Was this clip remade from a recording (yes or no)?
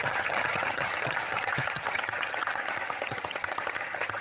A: yes